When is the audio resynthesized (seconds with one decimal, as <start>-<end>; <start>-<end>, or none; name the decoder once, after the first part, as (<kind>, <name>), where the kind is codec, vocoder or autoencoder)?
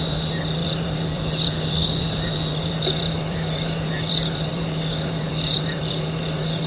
0.0-6.7 (vocoder, BigVGAN v2)